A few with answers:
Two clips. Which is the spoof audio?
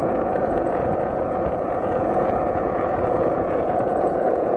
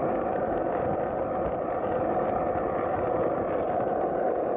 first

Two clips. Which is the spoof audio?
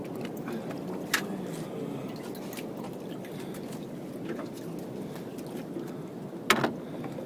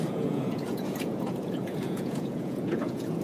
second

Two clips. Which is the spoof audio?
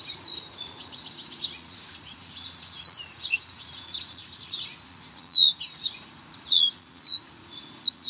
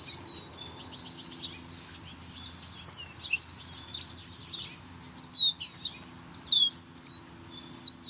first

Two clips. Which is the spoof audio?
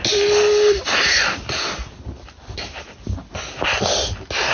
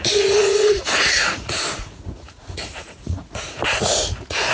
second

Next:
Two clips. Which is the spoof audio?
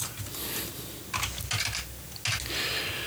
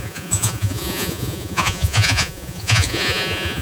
second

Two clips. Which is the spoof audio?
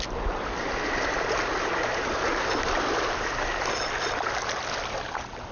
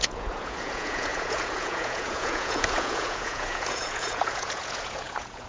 second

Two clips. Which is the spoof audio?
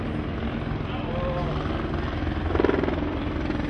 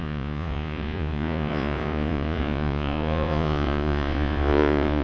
second